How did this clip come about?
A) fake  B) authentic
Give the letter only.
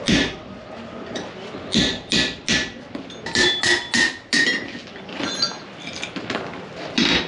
B